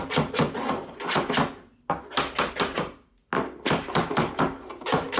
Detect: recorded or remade recorded